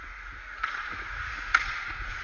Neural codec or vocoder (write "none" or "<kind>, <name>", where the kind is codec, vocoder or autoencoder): vocoder, Vocos